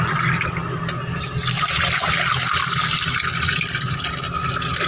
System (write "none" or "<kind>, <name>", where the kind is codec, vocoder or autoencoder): none